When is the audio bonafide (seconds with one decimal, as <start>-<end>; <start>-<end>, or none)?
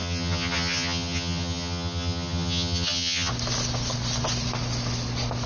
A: 3.3-5.5